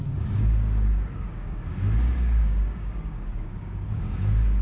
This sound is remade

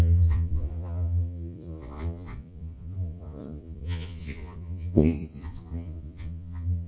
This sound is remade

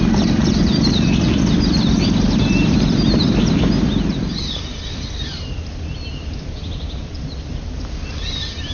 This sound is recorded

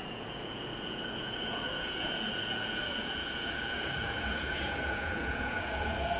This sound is remade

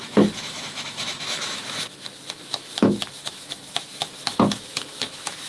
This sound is remade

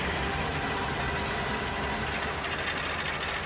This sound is recorded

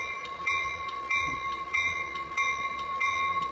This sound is remade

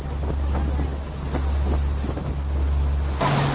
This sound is recorded